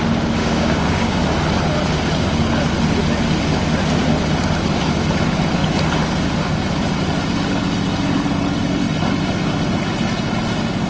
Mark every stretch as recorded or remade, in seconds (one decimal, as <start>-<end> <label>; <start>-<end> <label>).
0.0-0.4 recorded; 0.4-1.2 remade; 1.2-10.9 recorded